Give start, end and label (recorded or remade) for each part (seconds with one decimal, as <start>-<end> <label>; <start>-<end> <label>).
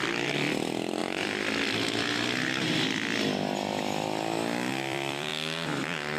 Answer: 0.0-1.0 remade; 1.0-4.7 recorded; 4.7-5.3 remade; 5.3-6.2 recorded